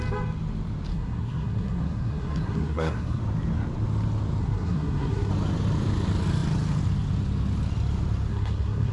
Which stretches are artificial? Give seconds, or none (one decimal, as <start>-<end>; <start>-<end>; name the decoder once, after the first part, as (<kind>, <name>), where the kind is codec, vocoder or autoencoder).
0.9-3.2 (codec, SNAC); 4.4-5.3; 8.3-8.9

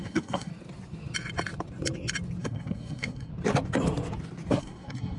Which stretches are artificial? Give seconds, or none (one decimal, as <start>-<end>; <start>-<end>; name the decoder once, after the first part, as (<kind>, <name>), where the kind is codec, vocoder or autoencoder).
0.0-0.5 (codec, SNAC); 2.4-3.3; 4.6-5.2

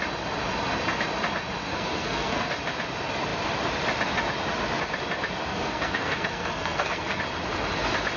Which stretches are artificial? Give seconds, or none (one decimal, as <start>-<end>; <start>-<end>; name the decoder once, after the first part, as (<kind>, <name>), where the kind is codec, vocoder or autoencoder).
1.7-2.5 (codec, SNAC); 5.5-7.2

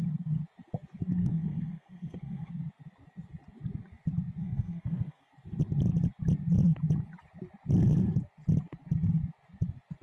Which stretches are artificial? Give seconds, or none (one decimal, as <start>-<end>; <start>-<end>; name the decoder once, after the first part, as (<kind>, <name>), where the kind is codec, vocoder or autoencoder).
1.2-2.5 (codec, SNAC); 4.4-5.3

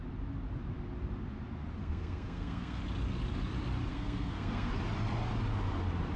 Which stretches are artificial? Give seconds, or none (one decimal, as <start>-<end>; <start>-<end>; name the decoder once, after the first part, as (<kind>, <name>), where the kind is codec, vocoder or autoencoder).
1.8-2.8 (codec, SNAC); 3.9-4.7

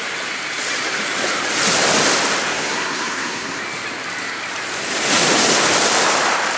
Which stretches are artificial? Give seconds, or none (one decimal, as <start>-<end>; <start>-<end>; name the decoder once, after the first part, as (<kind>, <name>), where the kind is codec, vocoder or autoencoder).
2.5-3.6 (codec, SNAC)

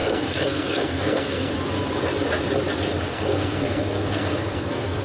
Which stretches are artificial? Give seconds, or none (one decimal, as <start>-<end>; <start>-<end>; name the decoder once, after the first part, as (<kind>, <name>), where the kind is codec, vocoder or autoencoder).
0.0-1.5 (codec, SNAC); 3.1-5.0

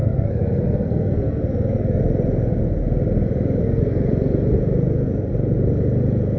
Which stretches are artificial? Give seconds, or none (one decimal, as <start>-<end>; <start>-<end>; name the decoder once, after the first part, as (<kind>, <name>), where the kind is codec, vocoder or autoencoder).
0.0-2.0 (codec, SNAC); 3.6-4.1